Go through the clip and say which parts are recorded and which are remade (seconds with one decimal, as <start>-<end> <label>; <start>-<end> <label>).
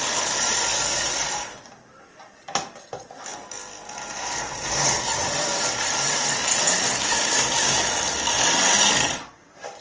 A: 0.0-7.0 recorded; 7.0-7.8 remade; 7.8-9.8 recorded